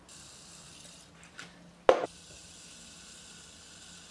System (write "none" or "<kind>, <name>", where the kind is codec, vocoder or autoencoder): none